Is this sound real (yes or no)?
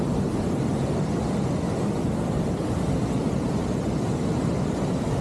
no